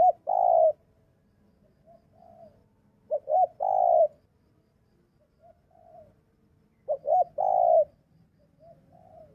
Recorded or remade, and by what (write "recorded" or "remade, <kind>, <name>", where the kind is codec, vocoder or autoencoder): recorded